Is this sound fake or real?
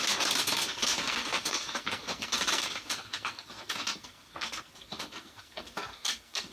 fake